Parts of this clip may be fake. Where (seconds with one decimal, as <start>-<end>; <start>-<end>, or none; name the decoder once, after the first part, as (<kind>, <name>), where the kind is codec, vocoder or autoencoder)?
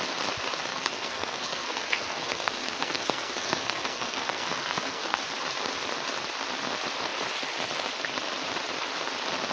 0.7-5.2 (codec, SNAC)